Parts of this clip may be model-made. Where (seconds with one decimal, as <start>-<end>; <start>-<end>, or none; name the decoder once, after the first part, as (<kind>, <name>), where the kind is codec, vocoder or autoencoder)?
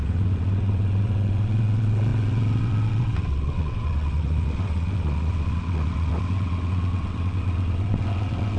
0.0-8.6 (vocoder, WaveNeXt)